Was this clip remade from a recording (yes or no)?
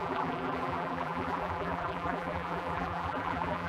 yes